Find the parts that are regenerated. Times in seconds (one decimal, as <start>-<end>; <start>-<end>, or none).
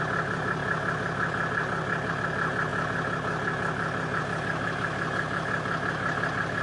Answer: none